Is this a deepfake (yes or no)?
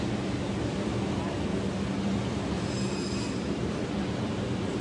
no